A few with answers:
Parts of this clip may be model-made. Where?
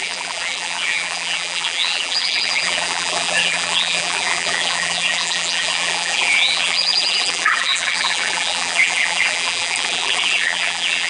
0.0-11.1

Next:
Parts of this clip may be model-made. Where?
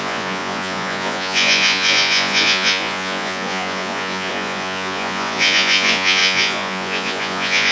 0.0-7.7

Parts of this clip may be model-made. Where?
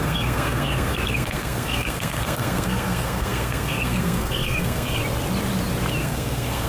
0.0-5.0; 6.0-6.7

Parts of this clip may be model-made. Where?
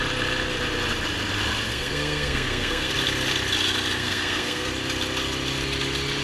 1.7-2.9; 4.0-4.7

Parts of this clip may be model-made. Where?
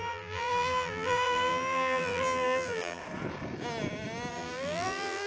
0.0-3.0; 4.3-5.3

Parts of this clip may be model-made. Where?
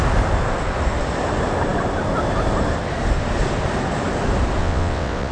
4.6-5.3